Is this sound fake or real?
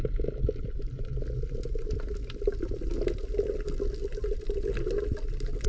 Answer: real